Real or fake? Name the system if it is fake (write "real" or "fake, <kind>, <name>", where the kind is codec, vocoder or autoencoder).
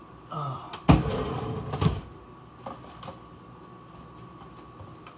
real